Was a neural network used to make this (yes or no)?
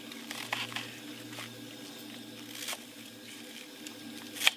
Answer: no